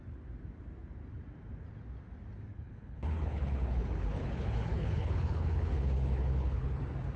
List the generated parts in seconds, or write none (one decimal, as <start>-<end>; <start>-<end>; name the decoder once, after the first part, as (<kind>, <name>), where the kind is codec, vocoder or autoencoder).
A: 2.5-6.8 (codec, HILCodec)